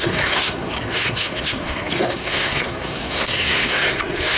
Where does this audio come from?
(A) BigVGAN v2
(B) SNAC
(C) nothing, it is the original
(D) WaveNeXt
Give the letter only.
B